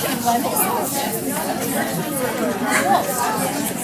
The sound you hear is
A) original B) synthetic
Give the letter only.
A